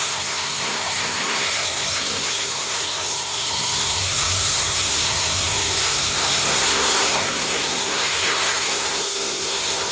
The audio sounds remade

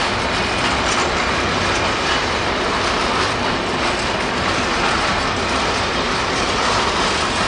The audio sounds recorded